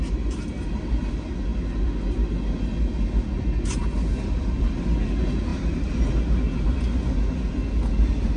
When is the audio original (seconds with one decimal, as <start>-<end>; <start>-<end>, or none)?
0.0-8.4